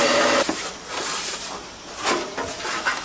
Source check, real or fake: fake